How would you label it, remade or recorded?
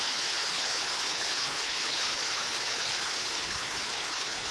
remade